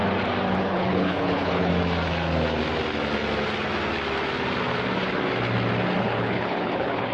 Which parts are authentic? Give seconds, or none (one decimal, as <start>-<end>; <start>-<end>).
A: 0.0-0.6; 1.7-6.0